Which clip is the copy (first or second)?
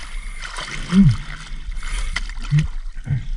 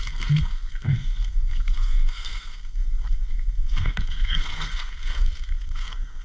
second